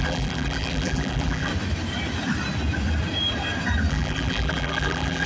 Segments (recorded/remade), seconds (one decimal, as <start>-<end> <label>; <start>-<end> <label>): 0.0-1.5 remade; 1.5-3.9 recorded; 3.9-5.3 remade